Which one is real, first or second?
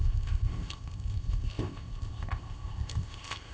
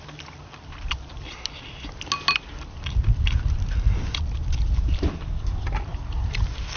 second